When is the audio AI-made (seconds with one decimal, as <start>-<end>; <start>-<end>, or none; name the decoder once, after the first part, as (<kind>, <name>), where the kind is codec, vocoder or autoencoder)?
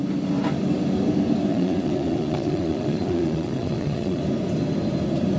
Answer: 1.5-4.2 (vocoder, Vocos)